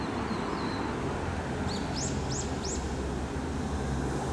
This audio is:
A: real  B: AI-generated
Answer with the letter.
A